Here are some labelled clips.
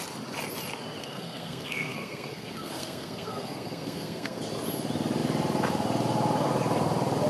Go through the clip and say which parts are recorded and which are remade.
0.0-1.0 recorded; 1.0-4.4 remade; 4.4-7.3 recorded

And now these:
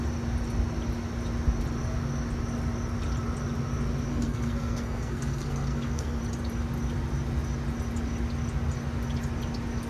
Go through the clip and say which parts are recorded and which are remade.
0.0-4.1 recorded; 4.1-6.2 remade; 6.2-9.9 recorded